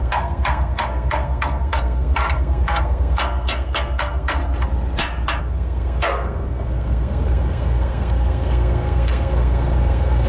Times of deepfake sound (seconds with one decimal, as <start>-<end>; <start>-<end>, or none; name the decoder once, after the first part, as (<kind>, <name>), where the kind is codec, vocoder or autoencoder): 0.0-4.4 (codec, SNAC); 5.4-10.3